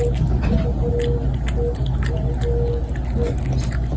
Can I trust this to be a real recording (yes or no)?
yes